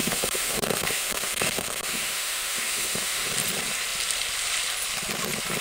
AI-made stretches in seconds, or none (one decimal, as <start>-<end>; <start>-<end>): 0.0-3.3